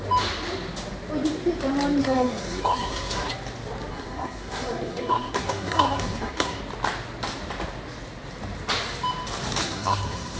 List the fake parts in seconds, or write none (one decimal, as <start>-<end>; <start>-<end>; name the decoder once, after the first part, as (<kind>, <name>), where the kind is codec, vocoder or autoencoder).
2.0-3.3 (codec, SNAC); 3.9-6.6; 9.6-10.4